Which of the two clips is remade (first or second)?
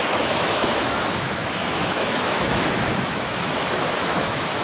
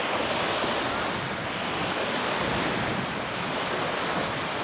first